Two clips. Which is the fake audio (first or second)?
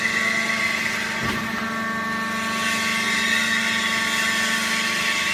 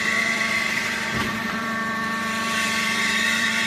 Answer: second